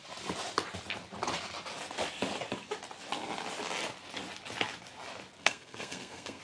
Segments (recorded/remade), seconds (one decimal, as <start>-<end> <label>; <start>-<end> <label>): 0.0-5.4 recorded; 5.4-6.4 remade